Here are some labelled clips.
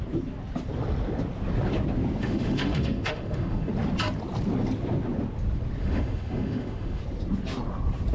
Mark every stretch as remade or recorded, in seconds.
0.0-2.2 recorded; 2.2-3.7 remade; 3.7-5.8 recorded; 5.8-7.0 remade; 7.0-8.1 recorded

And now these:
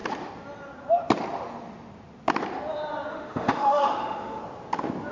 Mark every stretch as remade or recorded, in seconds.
0.0-3.1 recorded; 3.1-4.4 remade; 4.4-5.1 recorded

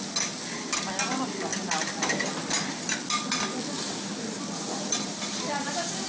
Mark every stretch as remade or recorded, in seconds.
0.0-6.1 recorded